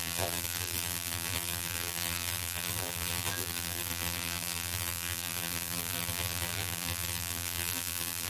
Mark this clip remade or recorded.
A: remade